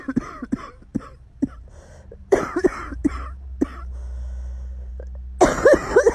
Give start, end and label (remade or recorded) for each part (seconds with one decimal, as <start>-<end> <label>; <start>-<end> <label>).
0.0-0.9 recorded; 0.9-3.1 remade; 3.1-6.1 recorded